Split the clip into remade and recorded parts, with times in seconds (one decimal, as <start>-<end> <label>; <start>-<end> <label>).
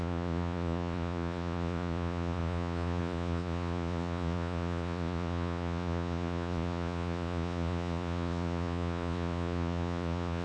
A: 0.0-10.4 remade